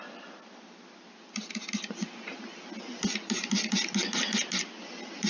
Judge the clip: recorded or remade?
recorded